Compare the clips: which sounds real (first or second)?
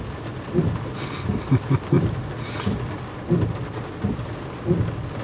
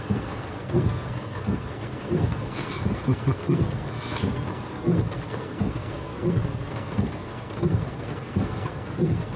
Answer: first